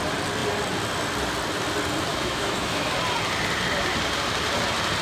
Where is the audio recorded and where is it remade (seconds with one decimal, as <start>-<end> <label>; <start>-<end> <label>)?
0.0-2.1 recorded; 2.1-2.9 remade; 2.9-5.0 recorded

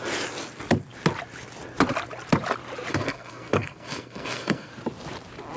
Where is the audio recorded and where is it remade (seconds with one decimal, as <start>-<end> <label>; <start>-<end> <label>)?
0.0-2.9 recorded; 2.9-4.7 remade; 4.7-5.6 recorded

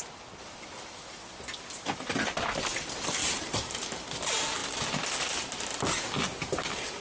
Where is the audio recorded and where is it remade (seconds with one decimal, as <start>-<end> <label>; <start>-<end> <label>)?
0.0-3.2 recorded; 3.2-3.8 remade; 3.8-7.0 recorded

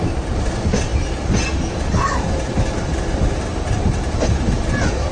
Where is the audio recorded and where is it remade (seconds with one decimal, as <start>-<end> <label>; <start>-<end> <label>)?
0.0-5.1 recorded

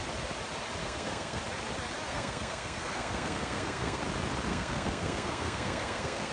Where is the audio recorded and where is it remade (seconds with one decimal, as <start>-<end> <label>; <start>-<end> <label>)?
0.0-0.8 recorded; 0.8-1.4 remade; 1.4-2.1 recorded; 2.1-4.0 remade; 4.0-4.5 recorded; 4.5-6.3 remade